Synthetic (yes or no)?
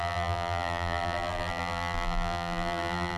yes